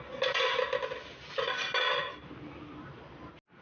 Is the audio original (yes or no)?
yes